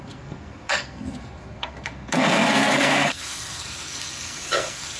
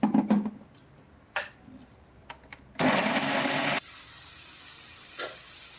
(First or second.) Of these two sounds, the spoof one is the first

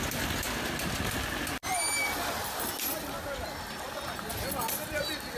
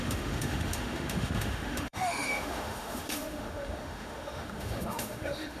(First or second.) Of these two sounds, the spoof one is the second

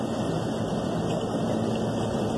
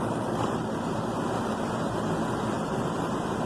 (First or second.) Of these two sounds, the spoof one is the second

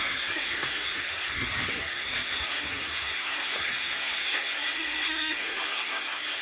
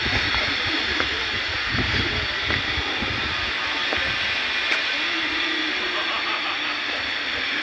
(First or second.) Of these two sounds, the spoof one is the first